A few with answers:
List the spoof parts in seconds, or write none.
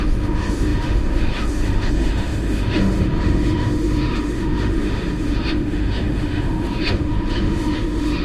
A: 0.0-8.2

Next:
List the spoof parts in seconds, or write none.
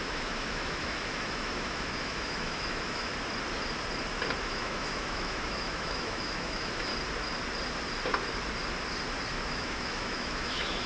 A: 0.0-3.1; 4.4-6.9; 9.3-10.9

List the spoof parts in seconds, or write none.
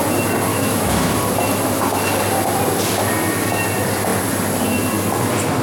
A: 0.5-1.1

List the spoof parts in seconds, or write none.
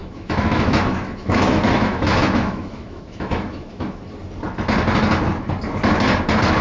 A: 0.0-4.0